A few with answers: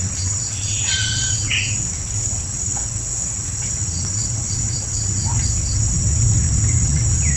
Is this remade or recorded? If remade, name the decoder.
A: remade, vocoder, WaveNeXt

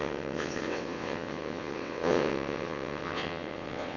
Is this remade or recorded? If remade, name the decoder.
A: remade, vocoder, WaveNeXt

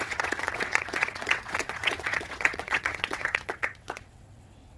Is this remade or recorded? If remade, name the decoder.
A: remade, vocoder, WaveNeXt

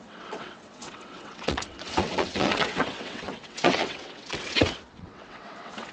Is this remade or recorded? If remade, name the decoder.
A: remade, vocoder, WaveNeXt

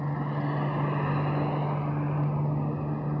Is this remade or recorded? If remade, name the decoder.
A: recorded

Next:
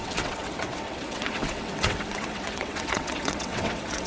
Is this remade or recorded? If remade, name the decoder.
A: remade, vocoder, WaveNeXt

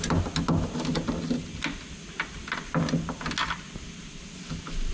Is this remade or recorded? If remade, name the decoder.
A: recorded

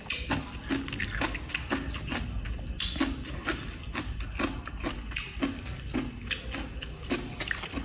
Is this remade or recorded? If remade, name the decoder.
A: recorded